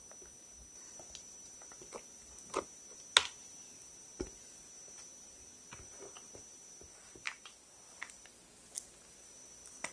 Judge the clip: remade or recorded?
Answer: recorded